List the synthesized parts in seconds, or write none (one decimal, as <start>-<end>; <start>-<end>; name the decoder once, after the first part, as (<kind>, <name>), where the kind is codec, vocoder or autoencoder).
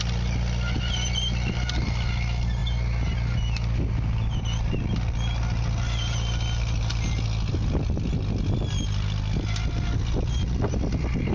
none